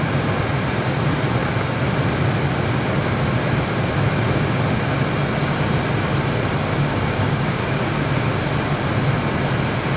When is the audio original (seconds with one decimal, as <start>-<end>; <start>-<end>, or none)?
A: 0.0-6.7; 8.4-10.0